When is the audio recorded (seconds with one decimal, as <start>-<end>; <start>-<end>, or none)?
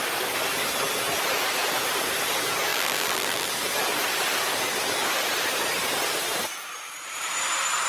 0.0-2.7; 3.5-7.9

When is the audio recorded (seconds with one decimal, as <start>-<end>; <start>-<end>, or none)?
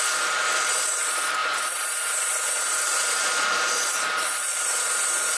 none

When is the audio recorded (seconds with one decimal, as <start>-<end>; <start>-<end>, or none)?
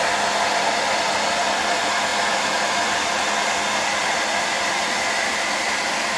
0.0-2.1; 5.8-6.2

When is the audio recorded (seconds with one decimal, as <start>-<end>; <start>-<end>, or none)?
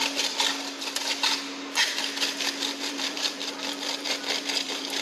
0.0-2.9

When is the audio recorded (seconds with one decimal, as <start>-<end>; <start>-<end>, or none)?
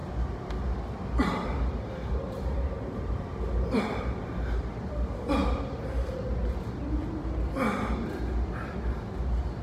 4.9-9.6